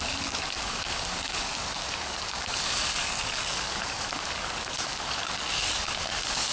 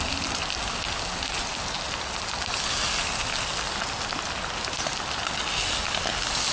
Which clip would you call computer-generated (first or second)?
first